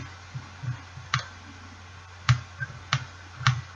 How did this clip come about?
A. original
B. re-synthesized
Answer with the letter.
A